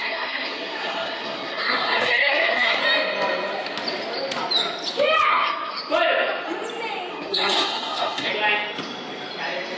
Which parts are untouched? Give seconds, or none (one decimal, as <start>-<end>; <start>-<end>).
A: 2.8-5.3; 5.8-7.1; 8.3-9.8